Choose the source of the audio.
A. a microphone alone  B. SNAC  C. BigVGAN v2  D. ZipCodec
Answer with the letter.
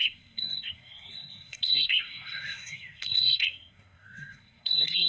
B